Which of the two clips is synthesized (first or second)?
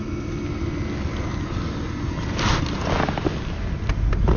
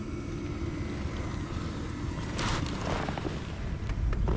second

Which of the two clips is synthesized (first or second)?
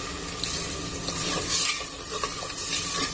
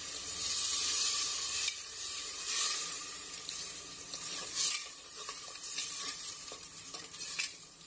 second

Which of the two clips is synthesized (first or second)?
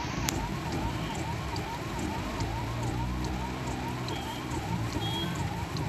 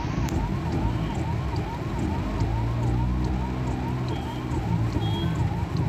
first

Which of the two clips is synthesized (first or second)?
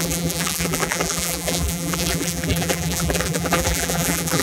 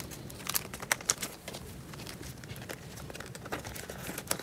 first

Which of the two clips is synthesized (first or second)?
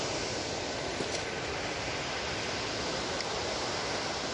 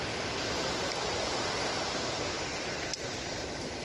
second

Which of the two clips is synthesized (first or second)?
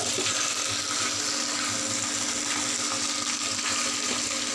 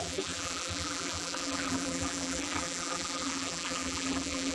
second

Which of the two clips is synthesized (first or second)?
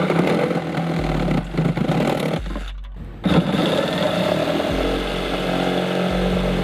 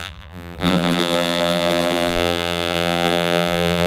second